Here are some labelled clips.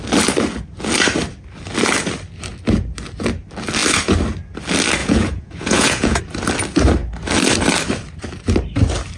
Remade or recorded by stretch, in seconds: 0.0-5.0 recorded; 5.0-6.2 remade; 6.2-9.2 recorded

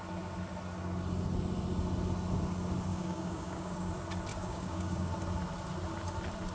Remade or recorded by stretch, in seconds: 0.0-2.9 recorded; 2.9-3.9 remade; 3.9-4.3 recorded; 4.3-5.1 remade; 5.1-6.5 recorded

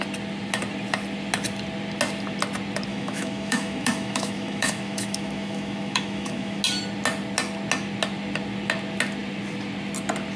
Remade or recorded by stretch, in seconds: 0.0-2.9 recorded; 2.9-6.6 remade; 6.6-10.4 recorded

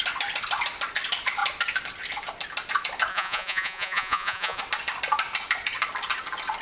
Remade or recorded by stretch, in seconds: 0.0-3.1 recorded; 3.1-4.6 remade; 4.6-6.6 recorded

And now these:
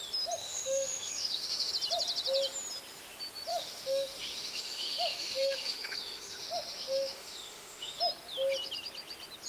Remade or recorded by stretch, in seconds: 0.0-0.4 recorded; 0.4-1.7 remade; 1.7-3.5 recorded; 3.5-8.0 remade; 8.0-9.5 recorded